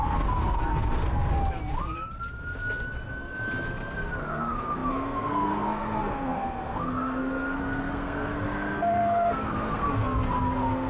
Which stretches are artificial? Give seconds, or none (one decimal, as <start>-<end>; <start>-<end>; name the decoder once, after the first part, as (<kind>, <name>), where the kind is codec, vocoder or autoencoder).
0.0-1.4 (codec, SNAC); 4.2-10.9